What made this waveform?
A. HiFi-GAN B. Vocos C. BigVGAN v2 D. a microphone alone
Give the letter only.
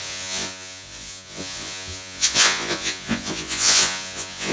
B